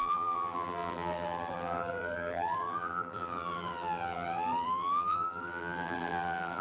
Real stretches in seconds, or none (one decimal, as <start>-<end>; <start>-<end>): none